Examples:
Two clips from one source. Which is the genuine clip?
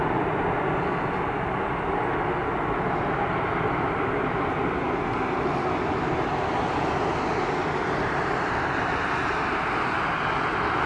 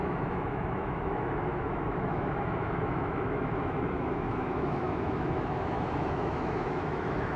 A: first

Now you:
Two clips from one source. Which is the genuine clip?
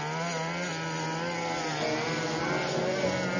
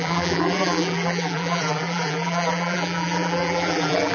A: first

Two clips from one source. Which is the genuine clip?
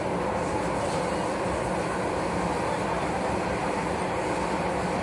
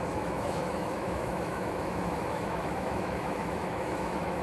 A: first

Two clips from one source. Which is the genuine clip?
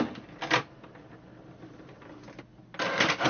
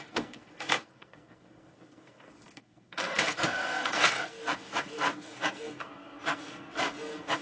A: first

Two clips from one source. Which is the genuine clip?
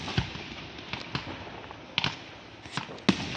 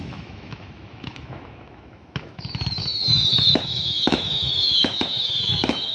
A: first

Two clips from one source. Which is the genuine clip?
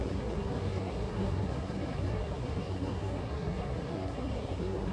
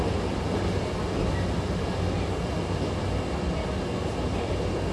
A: second